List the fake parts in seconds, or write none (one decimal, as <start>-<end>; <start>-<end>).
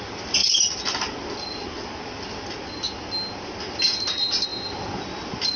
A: none